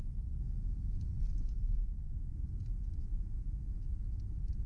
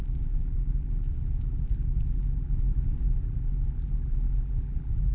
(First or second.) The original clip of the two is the first